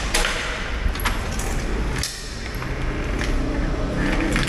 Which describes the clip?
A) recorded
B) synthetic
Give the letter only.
A